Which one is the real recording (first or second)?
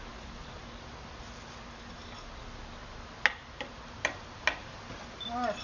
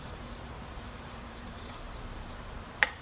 first